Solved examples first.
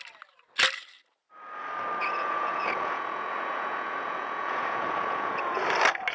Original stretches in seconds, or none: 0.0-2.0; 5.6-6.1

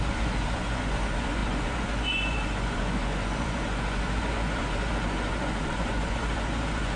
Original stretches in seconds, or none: none